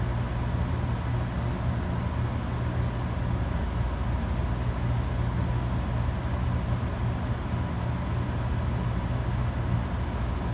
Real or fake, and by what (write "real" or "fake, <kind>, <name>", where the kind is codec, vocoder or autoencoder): real